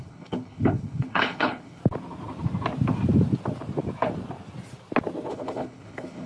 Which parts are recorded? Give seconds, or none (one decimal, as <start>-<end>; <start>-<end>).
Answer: 1.8-5.3